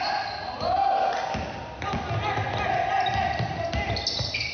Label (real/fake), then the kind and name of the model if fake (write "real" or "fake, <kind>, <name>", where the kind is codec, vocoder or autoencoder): real